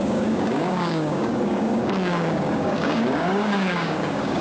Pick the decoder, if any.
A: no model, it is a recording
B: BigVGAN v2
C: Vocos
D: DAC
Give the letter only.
D